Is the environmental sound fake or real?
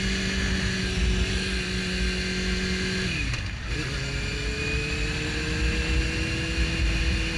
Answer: real